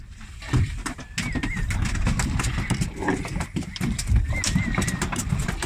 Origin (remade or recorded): recorded